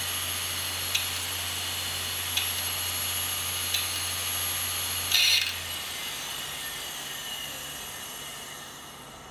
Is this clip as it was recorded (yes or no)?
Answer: yes